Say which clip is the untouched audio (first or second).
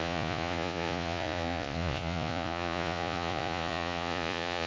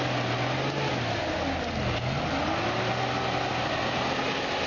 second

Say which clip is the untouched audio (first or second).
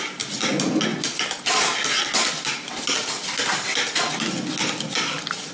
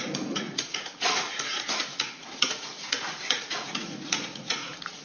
first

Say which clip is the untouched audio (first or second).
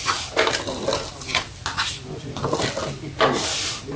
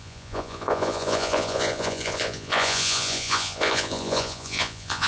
first